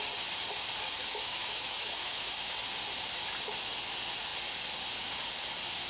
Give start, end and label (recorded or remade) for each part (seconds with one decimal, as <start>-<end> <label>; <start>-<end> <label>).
0.0-1.0 recorded; 1.0-2.5 remade; 2.5-5.9 recorded